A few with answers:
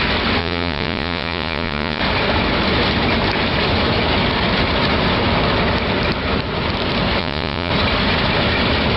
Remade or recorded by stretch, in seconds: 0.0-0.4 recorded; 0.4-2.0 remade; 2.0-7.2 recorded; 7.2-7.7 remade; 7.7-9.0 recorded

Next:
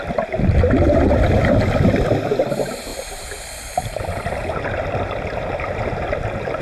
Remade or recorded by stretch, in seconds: 0.0-2.9 recorded; 2.9-4.3 remade; 4.3-6.6 recorded